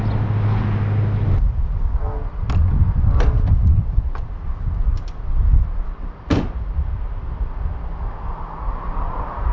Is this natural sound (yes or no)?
yes